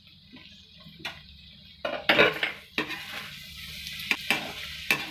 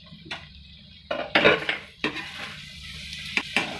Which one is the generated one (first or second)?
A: second